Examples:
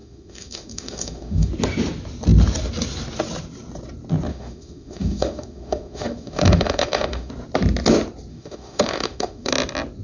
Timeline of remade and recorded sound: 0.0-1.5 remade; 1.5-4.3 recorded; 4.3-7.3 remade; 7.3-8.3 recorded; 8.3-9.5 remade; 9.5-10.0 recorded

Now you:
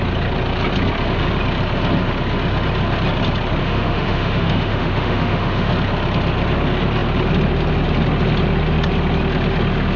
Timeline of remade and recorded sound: 0.0-3.6 recorded; 3.6-5.7 remade; 5.7-10.0 recorded

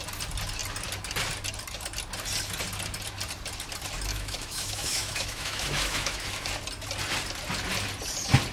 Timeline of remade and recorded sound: 0.0-4.1 recorded; 4.1-6.5 remade; 6.5-8.5 recorded

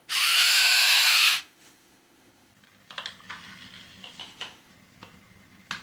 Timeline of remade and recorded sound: 0.0-2.5 remade; 2.5-4.2 recorded; 4.2-4.7 remade; 4.7-5.8 recorded